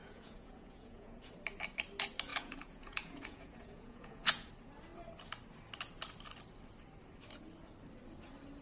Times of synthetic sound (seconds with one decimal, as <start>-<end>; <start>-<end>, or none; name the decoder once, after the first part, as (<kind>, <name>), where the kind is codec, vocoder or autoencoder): 0.0-1.3 (vocoder, Vocos); 2.3-4.5